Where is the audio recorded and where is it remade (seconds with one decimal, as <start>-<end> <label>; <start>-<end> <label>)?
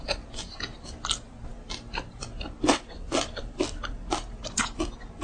0.0-5.2 recorded